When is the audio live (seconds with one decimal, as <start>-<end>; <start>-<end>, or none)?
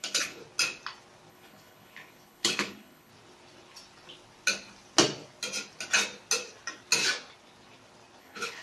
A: 0.4-1.3; 3.1-8.2